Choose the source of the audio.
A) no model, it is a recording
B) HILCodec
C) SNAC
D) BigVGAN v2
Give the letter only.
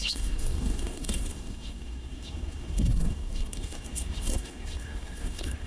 C